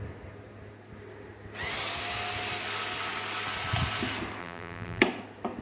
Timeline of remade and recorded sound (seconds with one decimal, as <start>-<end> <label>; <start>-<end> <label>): 0.0-4.4 recorded; 4.4-5.0 remade; 5.0-5.6 recorded